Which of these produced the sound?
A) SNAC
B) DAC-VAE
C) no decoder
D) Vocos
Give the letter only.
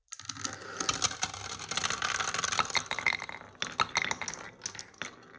C